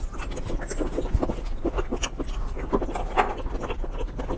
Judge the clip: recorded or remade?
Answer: recorded